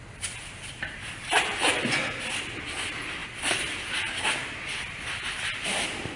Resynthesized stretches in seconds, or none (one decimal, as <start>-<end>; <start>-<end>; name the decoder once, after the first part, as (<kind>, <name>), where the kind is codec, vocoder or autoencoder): none